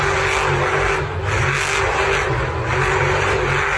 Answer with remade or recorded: recorded